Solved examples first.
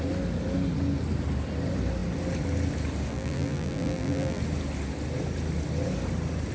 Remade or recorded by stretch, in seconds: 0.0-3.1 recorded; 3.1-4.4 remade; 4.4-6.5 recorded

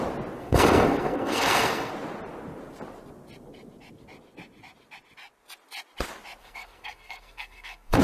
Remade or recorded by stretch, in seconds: 0.0-0.4 recorded; 0.4-1.9 remade; 1.9-6.4 recorded; 6.4-8.0 remade

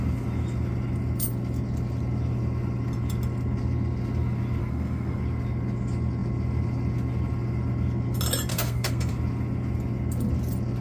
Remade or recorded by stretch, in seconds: 0.0-4.6 recorded; 4.6-5.2 remade; 5.2-8.5 recorded; 8.5-9.1 remade; 9.1-10.8 recorded

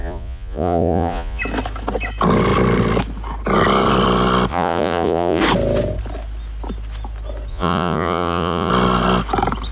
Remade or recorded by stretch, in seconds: 0.0-1.4 remade; 1.4-4.5 recorded; 4.5-5.4 remade; 5.4-7.5 recorded; 7.5-8.7 remade; 8.7-9.7 recorded

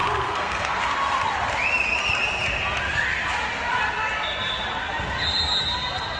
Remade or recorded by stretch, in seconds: 0.0-0.8 remade; 0.8-6.2 recorded

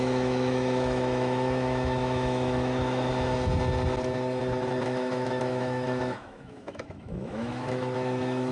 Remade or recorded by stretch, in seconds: 0.0-3.1 remade; 3.1-4.8 recorded; 4.8-8.5 remade

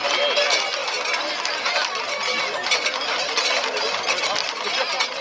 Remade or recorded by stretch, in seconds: 0.0-5.2 recorded